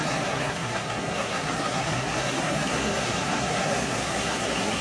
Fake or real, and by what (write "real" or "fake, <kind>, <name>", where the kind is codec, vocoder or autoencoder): fake, codec, SNAC